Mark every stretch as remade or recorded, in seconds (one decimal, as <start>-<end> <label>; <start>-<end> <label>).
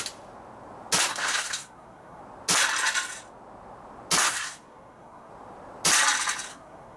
0.0-1.1 recorded; 1.1-2.2 remade; 2.2-4.2 recorded; 4.2-5.3 remade; 5.3-6.5 recorded; 6.5-7.0 remade